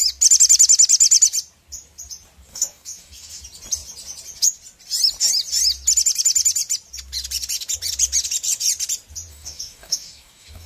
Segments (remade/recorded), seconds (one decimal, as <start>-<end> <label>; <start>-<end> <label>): 0.0-2.5 recorded; 2.5-3.4 remade; 3.4-9.3 recorded; 9.3-10.7 remade